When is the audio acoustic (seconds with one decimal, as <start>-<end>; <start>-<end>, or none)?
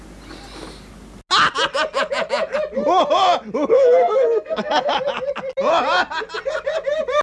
0.0-3.7; 4.9-7.2